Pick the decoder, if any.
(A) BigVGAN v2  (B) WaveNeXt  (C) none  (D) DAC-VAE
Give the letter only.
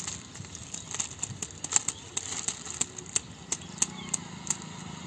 C